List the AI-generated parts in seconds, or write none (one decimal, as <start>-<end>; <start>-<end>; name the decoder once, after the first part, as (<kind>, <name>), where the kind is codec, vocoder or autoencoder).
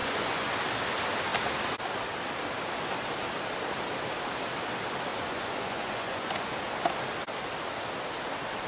0.0-0.5 (vocoder, Vocos); 5.1-6.5